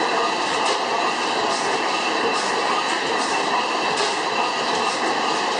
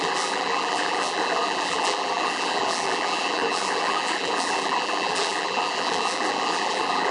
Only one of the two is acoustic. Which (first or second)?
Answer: first